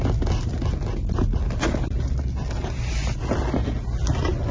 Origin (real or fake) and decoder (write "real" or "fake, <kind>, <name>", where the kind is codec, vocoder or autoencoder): real